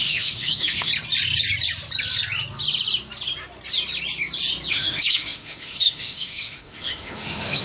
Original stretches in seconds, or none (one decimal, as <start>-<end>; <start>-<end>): 0.9-4.7